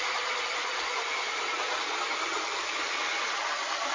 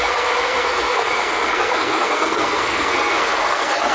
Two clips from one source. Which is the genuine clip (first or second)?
first